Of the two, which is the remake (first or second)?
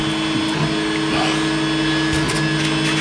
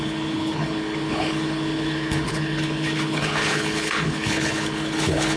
second